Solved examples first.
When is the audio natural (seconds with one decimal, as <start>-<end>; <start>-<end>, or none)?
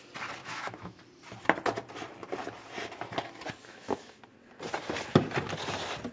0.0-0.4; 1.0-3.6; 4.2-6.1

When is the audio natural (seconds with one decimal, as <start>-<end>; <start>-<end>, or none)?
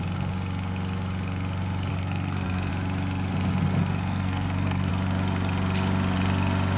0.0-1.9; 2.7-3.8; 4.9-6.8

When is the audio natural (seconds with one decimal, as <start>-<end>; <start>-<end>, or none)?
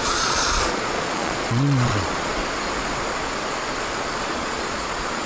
2.4-4.2